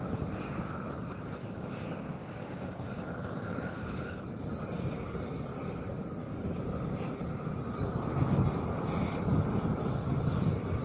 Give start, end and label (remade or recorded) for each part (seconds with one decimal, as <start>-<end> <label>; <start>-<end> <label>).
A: 0.0-1.4 recorded; 1.4-2.7 remade; 2.7-10.8 recorded